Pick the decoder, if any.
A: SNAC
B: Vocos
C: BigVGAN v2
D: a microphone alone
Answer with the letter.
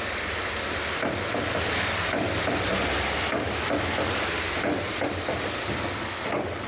D